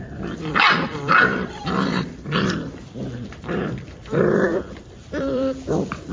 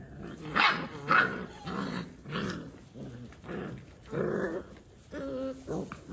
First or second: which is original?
second